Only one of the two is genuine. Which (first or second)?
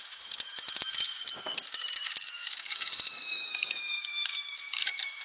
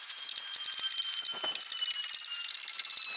second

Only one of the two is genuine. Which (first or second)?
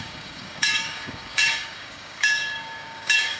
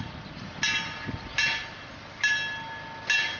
second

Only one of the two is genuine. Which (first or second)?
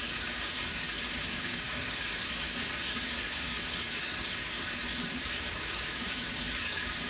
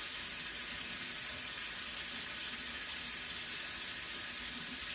second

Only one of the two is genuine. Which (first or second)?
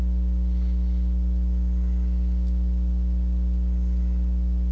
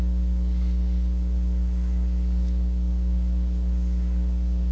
first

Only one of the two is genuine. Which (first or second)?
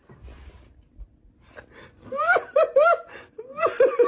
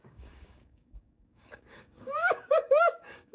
first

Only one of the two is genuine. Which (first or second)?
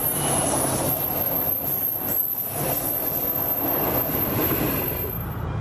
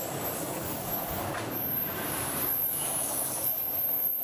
first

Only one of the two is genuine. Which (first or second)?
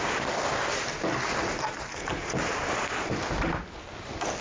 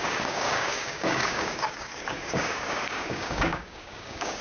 first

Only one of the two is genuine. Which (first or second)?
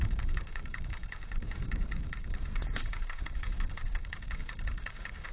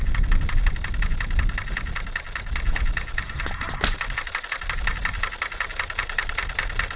second